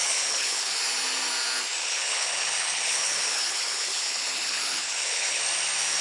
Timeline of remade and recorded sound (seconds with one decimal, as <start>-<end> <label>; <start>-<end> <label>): 0.0-0.8 remade; 0.8-1.8 recorded; 1.8-5.4 remade; 5.4-6.0 recorded